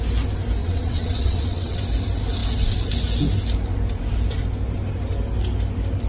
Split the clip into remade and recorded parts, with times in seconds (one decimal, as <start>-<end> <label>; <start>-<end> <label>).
0.0-0.6 recorded; 0.6-1.8 remade; 1.8-6.1 recorded